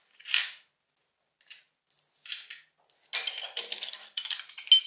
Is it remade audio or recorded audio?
recorded